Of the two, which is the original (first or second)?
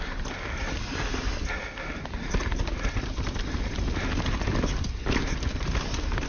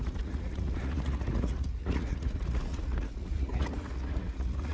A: first